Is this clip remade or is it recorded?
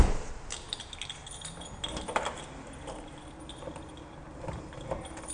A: recorded